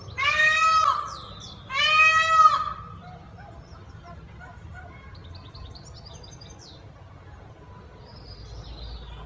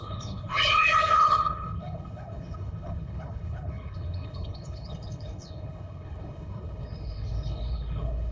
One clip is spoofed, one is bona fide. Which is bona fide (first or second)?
first